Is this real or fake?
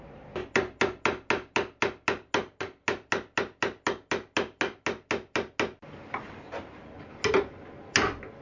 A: real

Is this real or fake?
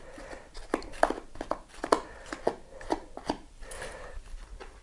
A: real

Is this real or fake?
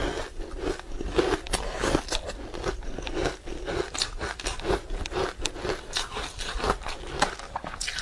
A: real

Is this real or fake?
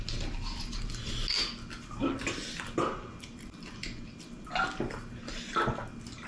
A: real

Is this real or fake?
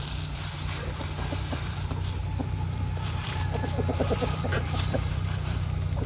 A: fake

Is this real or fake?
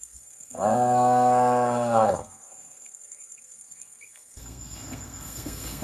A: fake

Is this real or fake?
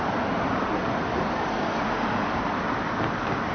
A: real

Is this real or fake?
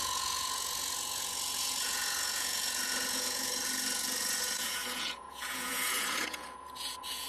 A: fake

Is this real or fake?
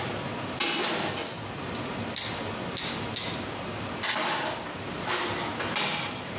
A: real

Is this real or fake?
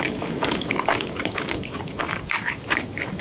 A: fake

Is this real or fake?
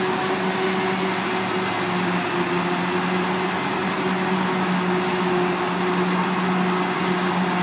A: real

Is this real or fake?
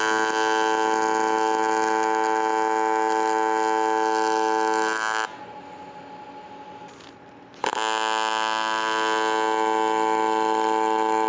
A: real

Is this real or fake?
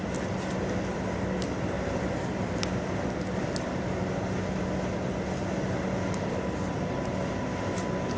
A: real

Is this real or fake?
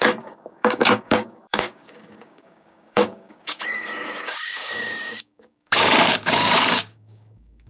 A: fake